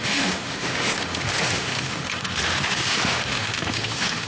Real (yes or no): no